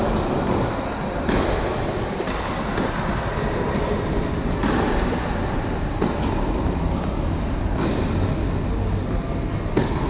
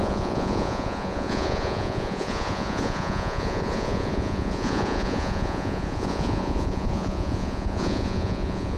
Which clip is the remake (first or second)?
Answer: second